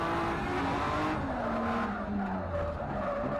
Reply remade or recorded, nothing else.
recorded